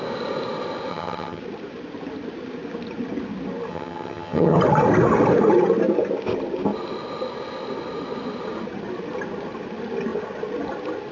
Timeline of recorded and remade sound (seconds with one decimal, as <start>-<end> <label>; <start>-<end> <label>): 0.0-0.9 recorded; 0.9-1.4 remade; 1.4-3.7 recorded; 3.7-4.6 remade; 4.6-11.1 recorded